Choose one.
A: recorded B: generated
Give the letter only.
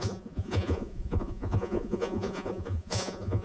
B